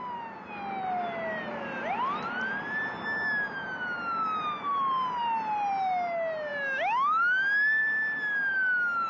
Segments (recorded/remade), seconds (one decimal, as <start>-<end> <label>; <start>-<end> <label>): 0.0-9.1 recorded